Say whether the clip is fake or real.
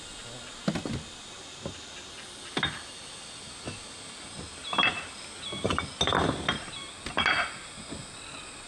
real